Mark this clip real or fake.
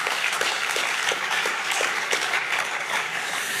fake